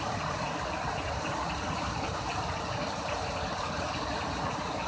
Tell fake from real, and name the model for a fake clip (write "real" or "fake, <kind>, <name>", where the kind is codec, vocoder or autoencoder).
real